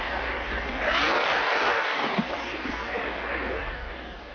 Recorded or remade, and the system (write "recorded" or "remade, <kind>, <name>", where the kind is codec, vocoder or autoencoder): remade, codec, DAC